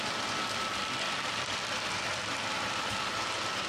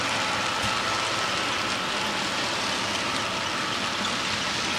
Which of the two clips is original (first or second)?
second